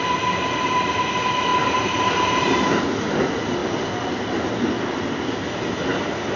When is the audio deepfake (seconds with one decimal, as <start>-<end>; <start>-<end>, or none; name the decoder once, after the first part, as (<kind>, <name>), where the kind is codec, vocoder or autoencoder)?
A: 1.5-2.8 (vocoder, BigVGAN v2)